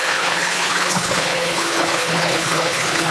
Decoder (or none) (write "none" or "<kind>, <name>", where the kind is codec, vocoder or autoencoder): codec, HILCodec